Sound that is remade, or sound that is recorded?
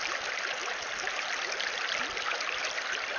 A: recorded